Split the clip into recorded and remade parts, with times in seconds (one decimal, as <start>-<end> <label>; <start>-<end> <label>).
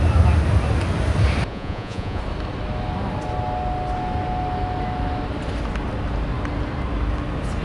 0.0-1.5 recorded; 1.5-2.2 remade; 2.2-7.6 recorded